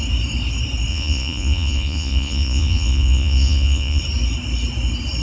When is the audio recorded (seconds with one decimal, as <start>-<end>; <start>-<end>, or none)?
0.0-0.9; 4.0-5.2